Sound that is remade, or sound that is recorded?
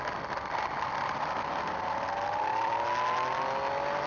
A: recorded